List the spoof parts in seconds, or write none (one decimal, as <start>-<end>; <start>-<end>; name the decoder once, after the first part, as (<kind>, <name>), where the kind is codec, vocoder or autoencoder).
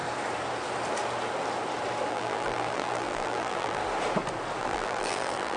2.1-3.8 (vocoder, BigVGAN v2); 4.6-5.6